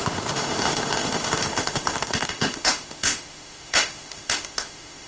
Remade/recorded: remade